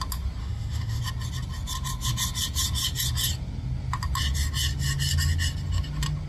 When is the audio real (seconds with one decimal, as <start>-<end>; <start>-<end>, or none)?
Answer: 0.0-0.4; 1.0-6.3